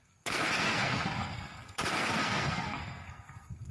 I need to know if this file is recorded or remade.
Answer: remade